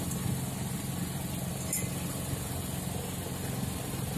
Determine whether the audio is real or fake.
real